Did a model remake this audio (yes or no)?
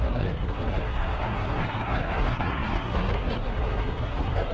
yes